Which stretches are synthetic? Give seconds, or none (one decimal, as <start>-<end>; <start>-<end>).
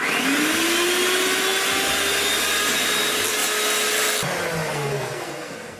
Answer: 4.7-5.8